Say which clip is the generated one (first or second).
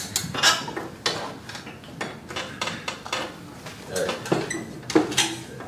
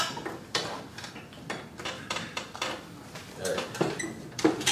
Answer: second